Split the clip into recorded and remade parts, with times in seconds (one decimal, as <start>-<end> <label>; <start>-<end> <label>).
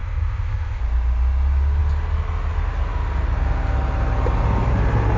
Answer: 0.0-0.8 remade; 0.8-5.2 recorded